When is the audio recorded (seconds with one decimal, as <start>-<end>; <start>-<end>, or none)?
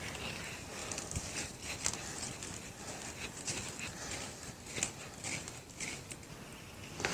0.0-7.1